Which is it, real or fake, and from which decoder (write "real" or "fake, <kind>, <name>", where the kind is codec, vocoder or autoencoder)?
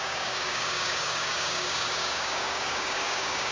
fake, codec, DAC